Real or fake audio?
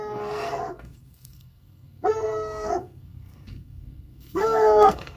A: fake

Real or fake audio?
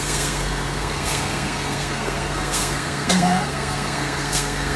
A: fake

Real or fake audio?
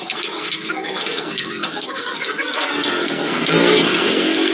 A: fake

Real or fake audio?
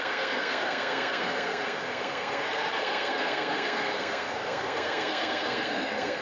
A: fake